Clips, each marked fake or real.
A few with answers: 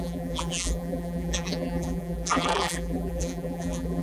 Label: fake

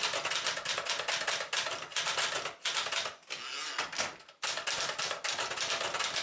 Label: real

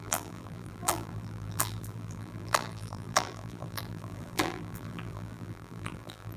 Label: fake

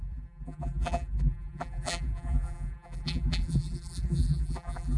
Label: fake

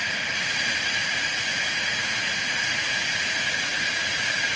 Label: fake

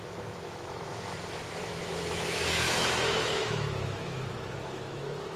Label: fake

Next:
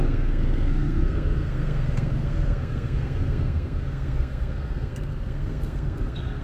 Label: fake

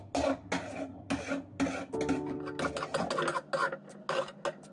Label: real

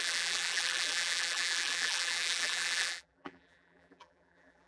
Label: fake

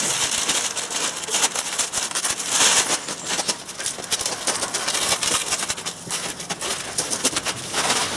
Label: real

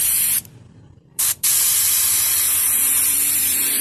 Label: fake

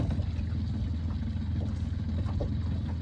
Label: real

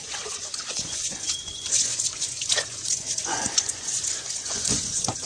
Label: fake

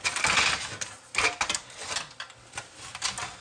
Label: real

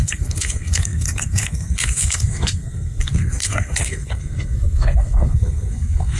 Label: fake